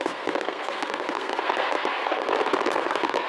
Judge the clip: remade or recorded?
remade